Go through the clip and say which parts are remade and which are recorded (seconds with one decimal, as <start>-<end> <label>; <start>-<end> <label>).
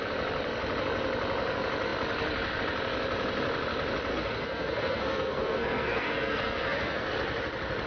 0.0-4.1 recorded; 4.1-7.1 remade; 7.1-7.9 recorded